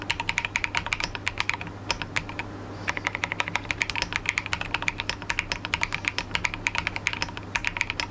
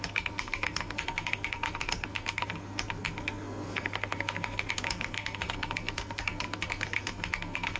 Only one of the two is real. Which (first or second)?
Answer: first